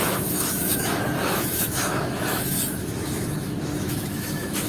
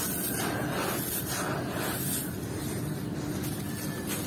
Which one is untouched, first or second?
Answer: second